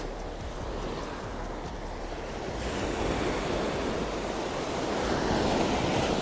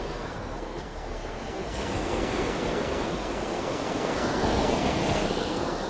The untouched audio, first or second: first